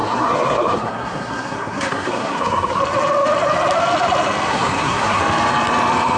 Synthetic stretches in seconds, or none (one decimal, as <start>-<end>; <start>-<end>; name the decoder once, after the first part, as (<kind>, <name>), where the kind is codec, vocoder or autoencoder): 0.0-2.8 (codec, SNAC); 4.5-5.2